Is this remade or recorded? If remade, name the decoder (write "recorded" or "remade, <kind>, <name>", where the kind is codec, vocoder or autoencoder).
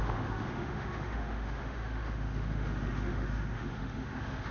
remade, autoencoder, DAC-VAE